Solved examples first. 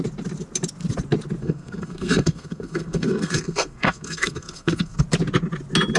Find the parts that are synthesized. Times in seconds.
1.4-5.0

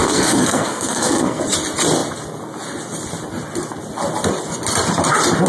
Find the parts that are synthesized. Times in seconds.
0.0-1.4

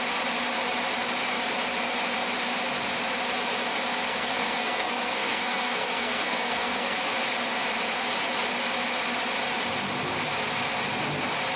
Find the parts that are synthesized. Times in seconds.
4.0-7.0